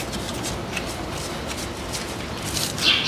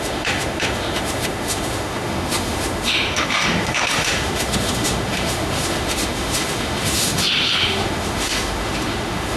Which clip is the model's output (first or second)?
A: second